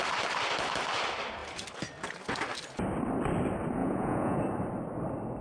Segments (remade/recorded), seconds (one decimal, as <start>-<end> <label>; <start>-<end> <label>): 0.0-3.8 recorded; 3.8-4.4 remade; 4.4-5.4 recorded